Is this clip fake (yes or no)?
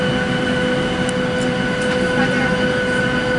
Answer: no